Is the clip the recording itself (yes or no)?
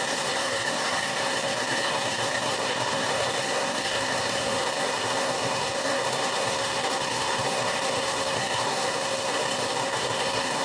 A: no